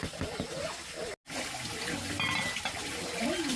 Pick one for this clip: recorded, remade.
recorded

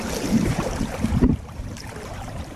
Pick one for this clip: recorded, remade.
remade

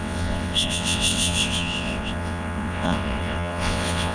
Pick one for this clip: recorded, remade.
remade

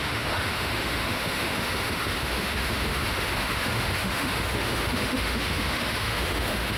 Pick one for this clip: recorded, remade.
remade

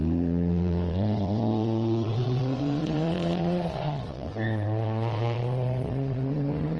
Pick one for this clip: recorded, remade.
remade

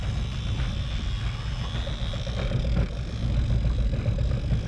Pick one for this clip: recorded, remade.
recorded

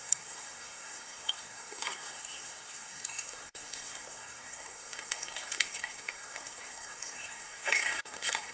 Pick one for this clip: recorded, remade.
remade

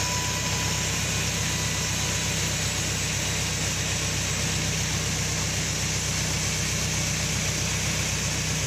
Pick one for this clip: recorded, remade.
recorded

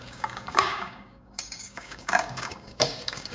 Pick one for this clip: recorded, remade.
remade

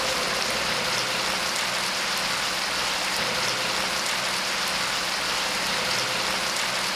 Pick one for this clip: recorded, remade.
recorded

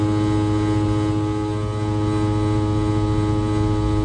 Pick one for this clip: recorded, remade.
recorded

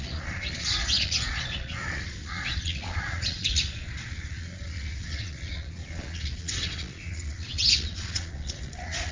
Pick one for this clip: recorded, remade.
remade